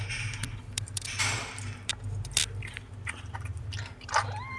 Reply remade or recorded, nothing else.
remade